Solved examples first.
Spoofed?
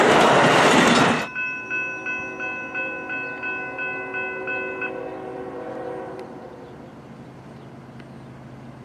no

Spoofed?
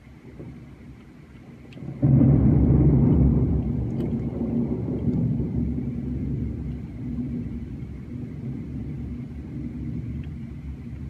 yes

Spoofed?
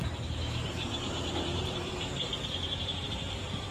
yes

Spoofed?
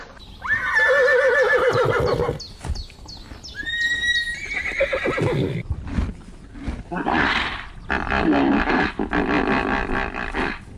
no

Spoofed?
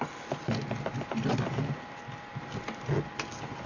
no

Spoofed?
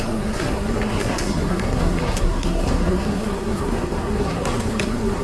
yes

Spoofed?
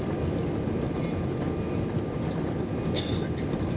no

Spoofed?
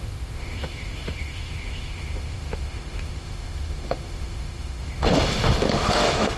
yes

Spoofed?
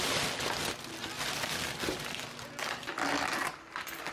no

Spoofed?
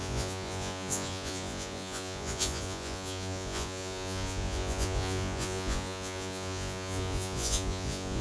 yes